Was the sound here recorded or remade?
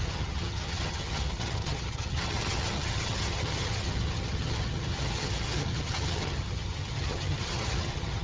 remade